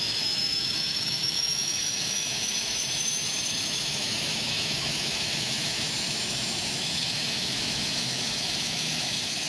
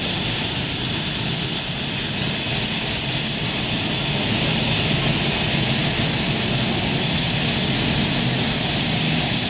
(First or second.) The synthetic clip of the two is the first